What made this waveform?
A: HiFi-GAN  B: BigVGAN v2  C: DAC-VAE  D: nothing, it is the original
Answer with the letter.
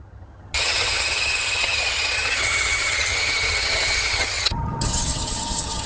A